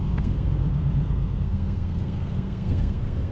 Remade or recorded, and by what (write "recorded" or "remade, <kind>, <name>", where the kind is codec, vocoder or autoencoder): remade, codec, SNAC